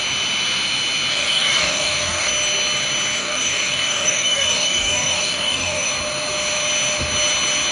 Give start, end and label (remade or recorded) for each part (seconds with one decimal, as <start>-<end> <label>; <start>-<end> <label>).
0.0-1.1 recorded; 1.1-2.3 remade; 2.3-3.2 recorded; 3.2-5.9 remade; 5.9-7.7 recorded

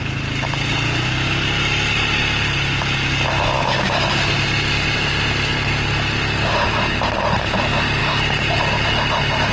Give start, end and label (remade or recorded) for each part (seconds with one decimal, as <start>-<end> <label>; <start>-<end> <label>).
0.0-9.5 recorded

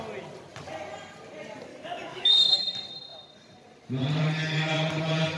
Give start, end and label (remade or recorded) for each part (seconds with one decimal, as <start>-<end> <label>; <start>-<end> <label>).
0.0-1.7 recorded; 1.7-2.6 remade; 2.6-5.4 recorded

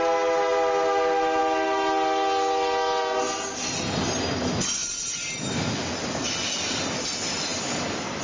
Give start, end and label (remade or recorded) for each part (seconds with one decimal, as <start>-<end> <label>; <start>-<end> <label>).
0.0-8.2 recorded

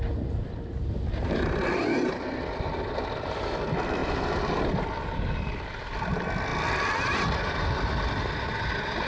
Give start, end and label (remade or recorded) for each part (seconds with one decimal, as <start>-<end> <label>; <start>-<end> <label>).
0.0-4.0 recorded; 4.0-4.6 remade; 4.6-9.1 recorded

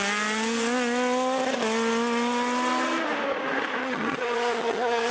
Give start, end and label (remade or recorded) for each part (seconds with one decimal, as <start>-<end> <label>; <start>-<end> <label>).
0.0-3.8 recorded; 3.8-5.1 remade

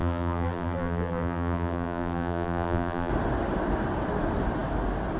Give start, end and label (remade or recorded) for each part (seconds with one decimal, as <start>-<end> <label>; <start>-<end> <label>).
0.0-3.1 remade; 3.1-5.2 recorded

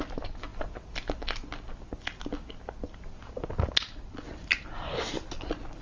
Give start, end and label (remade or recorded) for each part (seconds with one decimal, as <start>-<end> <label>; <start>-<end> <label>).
0.0-5.8 recorded